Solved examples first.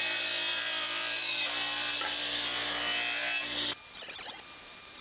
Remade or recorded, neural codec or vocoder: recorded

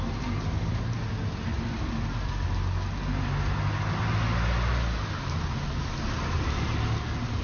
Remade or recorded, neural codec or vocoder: recorded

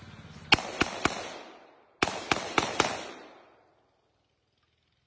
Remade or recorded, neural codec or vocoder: recorded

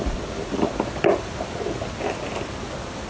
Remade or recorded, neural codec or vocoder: recorded